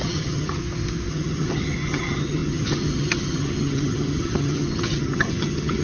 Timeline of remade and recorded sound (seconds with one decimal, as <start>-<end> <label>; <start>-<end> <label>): 0.0-0.6 remade; 0.6-1.1 recorded; 1.1-5.8 remade